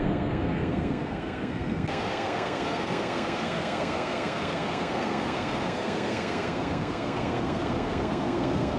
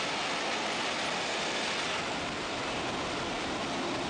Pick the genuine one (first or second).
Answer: second